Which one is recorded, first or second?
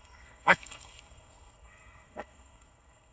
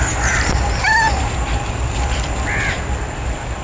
second